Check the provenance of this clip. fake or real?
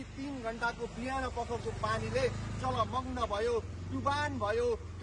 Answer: real